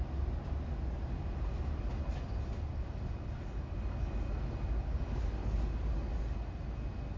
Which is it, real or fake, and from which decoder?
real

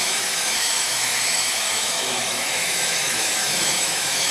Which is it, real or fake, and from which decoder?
fake, autoencoder, DAC-VAE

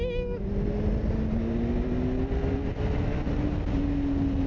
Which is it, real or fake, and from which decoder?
real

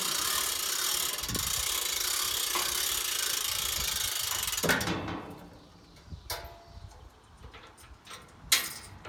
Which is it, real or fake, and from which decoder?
real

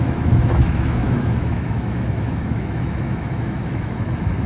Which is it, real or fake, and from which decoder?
fake, autoencoder, DAC-VAE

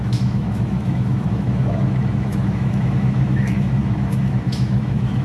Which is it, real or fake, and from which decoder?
fake, autoencoder, DAC-VAE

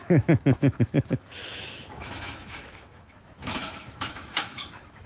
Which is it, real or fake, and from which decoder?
fake, autoencoder, DAC-VAE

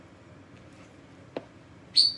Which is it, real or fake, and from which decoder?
real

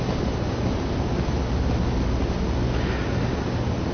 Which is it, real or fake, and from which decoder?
real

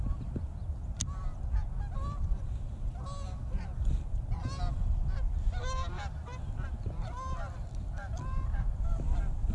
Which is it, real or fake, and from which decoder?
real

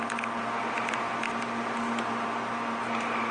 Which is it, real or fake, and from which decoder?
real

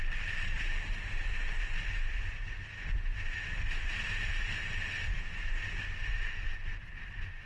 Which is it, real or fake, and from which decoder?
real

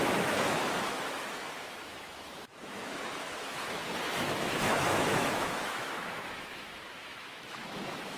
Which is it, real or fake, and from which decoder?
fake, autoencoder, DAC-VAE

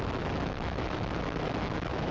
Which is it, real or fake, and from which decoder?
fake, autoencoder, DAC-VAE